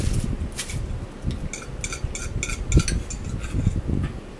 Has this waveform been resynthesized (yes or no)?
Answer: no